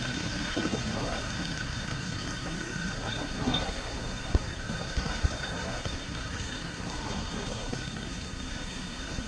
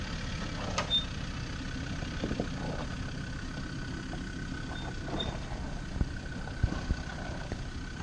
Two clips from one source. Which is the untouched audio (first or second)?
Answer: second